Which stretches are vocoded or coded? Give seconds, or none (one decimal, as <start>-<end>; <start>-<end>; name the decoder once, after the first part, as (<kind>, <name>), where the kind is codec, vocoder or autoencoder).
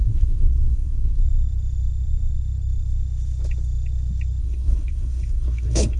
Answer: 0.0-1.2 (codec, SNAC); 4.4-6.0